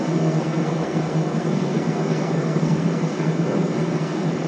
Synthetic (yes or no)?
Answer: yes